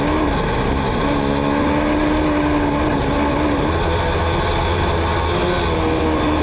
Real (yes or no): yes